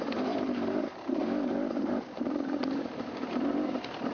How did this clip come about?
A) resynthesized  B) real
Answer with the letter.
A